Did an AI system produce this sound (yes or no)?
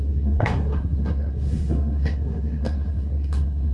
yes